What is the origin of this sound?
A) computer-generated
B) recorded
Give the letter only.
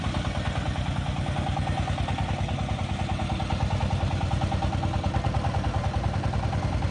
B